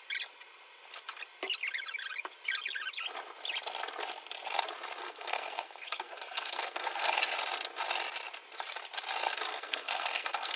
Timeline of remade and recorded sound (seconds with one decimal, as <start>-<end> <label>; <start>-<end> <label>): 0.0-5.0 recorded; 5.0-7.1 remade; 7.1-9.5 recorded; 9.5-10.6 remade

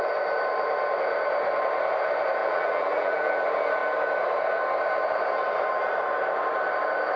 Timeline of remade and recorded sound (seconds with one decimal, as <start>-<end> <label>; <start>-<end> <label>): 0.0-2.4 recorded; 2.4-3.3 remade; 3.3-7.2 recorded

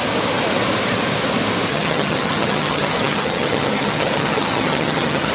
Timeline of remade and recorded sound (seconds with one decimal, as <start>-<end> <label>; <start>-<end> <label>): 0.0-1.7 recorded; 1.7-5.3 remade

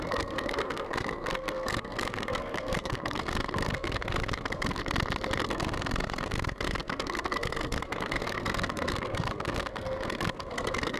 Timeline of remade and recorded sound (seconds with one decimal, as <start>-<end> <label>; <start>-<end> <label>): 0.0-4.8 remade; 4.8-5.4 recorded; 5.4-11.0 remade

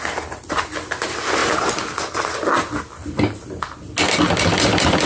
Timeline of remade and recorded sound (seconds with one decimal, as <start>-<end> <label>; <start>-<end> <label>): 0.0-5.1 recorded

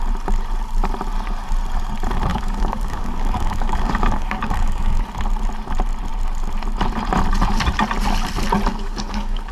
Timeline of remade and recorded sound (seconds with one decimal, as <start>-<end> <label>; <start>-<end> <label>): 0.0-2.3 recorded; 2.3-5.0 remade; 5.0-8.7 recorded; 8.7-9.5 remade